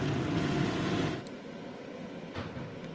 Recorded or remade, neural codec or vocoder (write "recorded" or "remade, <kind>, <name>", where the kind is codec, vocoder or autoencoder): recorded